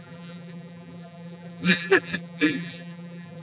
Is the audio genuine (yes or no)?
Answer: no